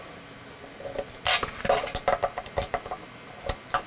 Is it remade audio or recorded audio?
recorded